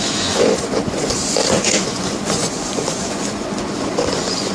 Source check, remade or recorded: remade